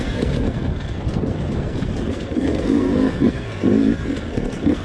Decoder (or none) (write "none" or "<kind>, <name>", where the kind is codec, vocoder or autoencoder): codec, SNAC